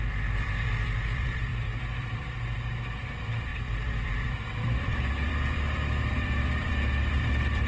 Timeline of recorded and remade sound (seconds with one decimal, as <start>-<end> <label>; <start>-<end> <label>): 0.0-7.7 remade